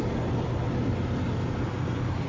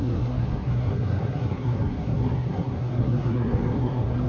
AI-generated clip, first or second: second